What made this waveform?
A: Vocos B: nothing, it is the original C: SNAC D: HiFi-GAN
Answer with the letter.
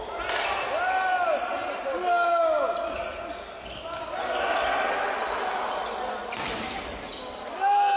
B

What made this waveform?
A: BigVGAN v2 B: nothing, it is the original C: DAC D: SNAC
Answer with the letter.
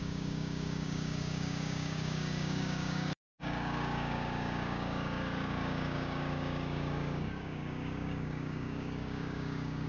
C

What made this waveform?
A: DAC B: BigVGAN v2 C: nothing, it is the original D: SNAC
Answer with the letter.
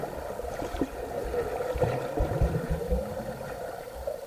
C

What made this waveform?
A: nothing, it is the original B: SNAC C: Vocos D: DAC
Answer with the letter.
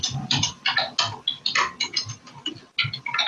A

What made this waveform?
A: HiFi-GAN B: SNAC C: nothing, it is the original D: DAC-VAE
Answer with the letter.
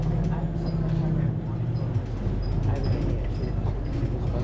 C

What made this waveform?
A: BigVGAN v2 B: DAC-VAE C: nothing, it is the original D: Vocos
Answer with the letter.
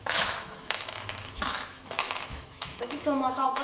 B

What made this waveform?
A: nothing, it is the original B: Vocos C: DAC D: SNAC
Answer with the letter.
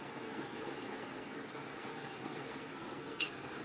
D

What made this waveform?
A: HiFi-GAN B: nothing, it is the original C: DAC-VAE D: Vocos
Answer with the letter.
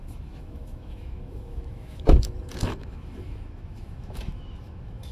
C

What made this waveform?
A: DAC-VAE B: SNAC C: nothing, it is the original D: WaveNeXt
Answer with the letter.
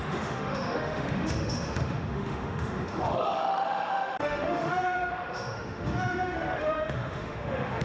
A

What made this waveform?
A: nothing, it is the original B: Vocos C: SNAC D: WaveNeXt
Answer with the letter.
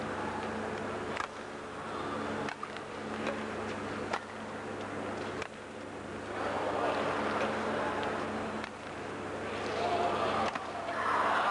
A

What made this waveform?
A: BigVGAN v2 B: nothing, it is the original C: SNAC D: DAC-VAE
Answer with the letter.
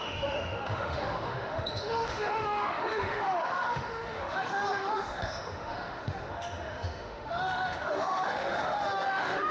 D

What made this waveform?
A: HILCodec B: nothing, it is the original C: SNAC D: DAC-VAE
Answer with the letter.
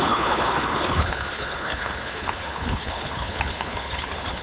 A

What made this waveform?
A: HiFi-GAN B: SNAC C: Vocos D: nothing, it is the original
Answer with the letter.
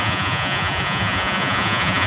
C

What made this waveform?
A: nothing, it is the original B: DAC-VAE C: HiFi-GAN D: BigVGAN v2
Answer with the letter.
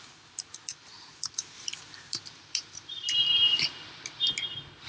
D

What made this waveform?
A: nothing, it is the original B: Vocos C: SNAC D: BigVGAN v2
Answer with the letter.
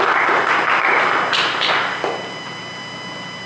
D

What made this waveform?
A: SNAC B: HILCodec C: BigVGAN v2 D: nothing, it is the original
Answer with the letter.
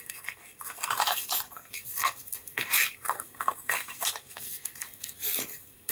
A